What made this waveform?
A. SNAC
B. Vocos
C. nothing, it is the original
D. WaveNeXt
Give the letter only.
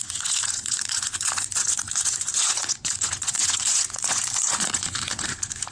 B